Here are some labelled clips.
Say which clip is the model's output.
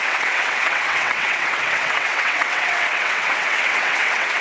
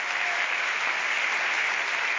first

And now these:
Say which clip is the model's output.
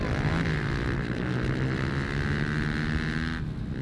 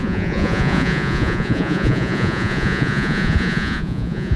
second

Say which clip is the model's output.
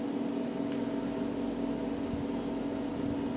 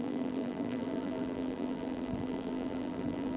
second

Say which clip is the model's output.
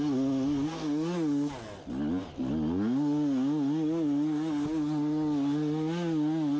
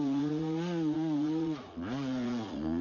second